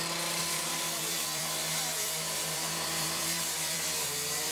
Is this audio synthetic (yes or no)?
yes